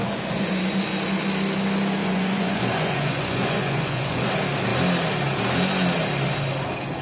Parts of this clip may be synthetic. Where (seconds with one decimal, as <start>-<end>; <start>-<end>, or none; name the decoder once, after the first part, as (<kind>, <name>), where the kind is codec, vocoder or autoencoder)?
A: 0.0-0.5 (vocoder, Vocos); 2.0-4.3